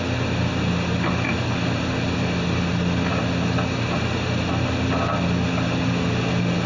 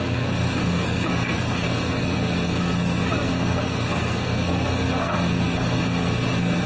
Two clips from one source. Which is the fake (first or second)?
second